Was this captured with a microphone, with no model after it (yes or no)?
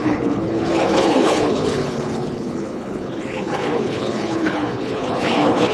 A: no